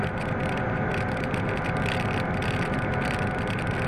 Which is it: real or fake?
real